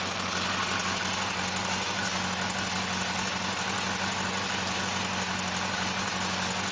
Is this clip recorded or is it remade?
recorded